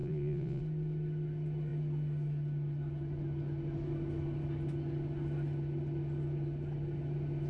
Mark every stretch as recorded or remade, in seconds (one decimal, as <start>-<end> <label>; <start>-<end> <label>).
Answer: 0.0-0.6 remade; 0.6-7.5 recorded